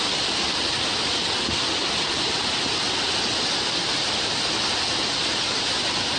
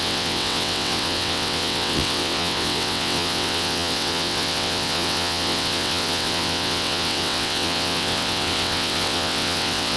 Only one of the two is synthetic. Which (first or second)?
second